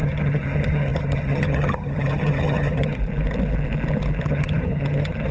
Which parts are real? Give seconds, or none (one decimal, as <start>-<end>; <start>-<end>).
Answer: 3.0-4.3